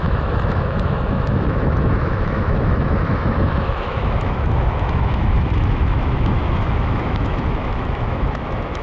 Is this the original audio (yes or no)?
no